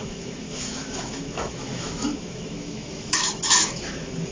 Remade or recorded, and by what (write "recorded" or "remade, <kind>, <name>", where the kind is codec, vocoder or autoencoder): remade, autoencoder, DAC-VAE